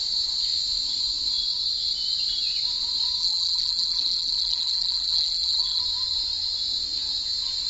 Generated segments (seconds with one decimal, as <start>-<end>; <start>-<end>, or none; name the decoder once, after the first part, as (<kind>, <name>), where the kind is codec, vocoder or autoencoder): 3.2-5.8 (vocoder, BigVGAN v2)